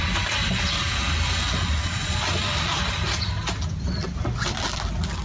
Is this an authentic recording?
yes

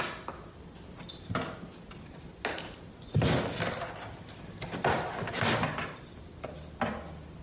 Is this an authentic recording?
yes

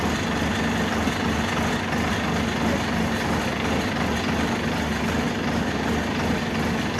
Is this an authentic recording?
yes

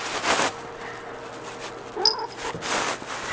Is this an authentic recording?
yes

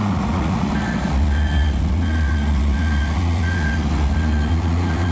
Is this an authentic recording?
no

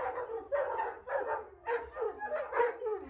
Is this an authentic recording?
yes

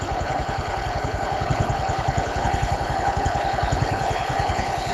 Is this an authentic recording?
no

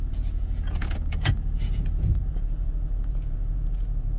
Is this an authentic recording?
no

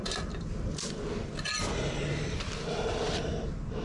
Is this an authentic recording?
yes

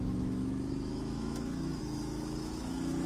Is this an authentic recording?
no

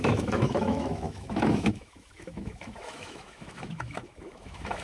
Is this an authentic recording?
no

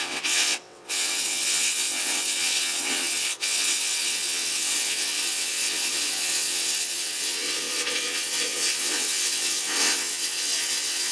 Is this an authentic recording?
no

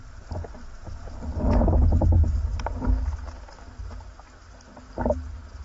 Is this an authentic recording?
yes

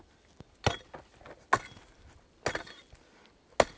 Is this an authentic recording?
yes